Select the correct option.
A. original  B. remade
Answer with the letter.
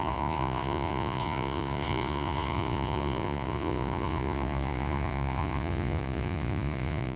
B